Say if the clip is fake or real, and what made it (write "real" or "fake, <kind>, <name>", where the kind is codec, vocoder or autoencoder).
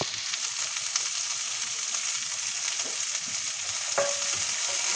real